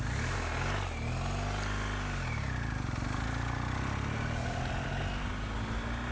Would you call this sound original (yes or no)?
yes